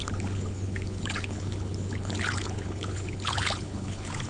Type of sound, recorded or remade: remade